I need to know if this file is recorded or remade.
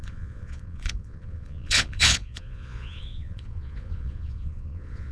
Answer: remade